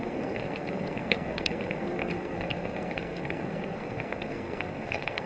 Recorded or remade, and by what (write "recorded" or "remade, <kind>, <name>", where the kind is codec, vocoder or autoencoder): remade, codec, SNAC